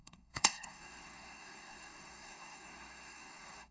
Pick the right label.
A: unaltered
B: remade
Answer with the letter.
B